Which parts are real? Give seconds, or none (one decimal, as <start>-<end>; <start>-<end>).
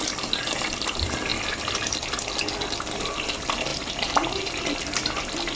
0.0-3.7; 4.4-5.6